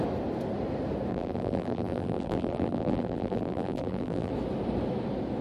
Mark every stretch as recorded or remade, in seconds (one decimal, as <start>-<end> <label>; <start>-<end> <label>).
0.0-1.1 recorded; 1.1-4.3 remade; 4.3-5.4 recorded